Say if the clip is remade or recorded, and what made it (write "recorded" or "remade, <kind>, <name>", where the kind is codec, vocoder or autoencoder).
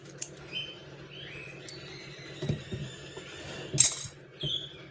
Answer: recorded